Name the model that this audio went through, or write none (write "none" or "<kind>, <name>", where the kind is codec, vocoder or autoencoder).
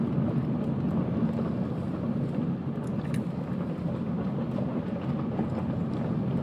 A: none